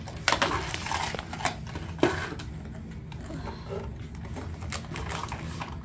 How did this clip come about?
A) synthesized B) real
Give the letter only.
B